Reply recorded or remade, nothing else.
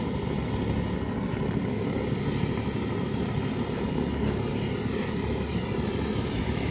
recorded